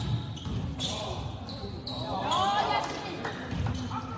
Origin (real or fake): real